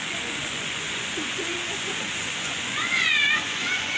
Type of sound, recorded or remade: remade